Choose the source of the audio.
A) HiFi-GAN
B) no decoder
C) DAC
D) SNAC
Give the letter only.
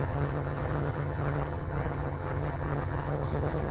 A